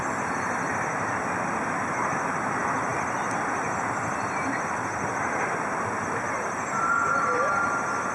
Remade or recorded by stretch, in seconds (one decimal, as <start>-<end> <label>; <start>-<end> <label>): 0.0-8.1 recorded